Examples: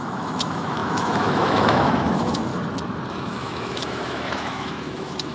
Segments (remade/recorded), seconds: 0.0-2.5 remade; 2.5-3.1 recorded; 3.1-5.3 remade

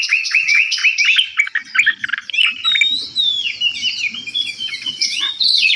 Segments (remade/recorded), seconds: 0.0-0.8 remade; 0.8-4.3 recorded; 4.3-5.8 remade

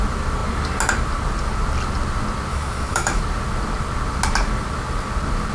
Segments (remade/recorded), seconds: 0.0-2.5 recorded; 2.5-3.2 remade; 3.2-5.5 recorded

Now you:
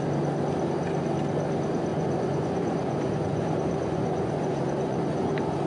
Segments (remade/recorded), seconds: 0.0-1.9 recorded; 1.9-5.3 remade; 5.3-5.7 recorded

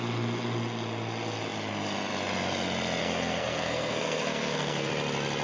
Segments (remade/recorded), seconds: 0.0-3.0 recorded; 3.0-4.9 remade; 4.9-5.4 recorded

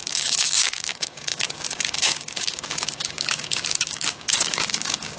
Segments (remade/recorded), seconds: 0.0-5.2 remade